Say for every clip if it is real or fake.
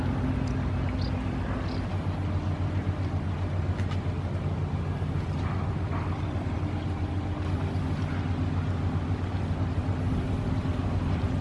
real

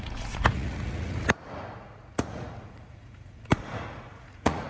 fake